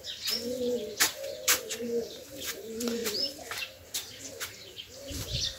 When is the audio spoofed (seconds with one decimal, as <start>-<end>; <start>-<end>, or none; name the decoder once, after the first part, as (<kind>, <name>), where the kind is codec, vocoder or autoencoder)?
1.0-5.6 (vocoder, BigVGAN v2)